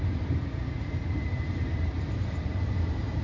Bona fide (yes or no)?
no